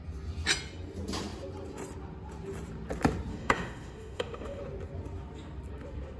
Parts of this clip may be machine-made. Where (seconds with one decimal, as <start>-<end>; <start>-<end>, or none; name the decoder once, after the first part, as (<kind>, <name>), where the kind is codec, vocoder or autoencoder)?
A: 3.3-4.6 (autoencoder, DAC-VAE)